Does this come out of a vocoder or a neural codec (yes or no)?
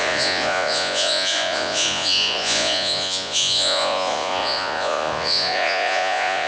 yes